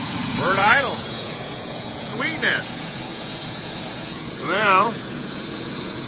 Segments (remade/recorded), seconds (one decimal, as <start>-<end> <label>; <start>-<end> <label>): 0.0-6.1 remade